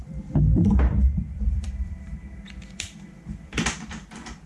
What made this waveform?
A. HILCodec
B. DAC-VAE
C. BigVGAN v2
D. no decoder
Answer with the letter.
C